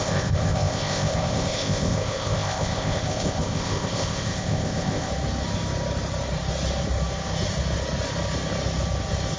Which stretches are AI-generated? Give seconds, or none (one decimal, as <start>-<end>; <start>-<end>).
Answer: 0.0-5.1